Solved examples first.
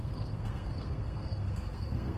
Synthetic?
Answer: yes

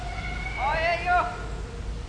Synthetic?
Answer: no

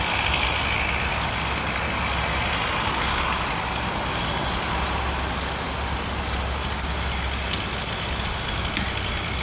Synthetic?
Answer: no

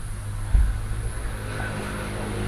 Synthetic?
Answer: no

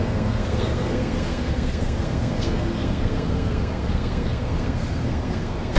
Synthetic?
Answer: yes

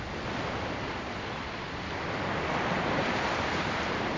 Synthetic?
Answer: no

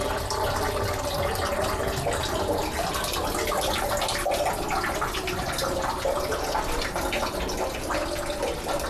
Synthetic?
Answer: no